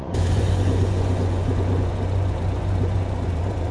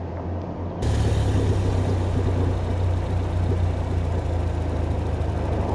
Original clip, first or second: second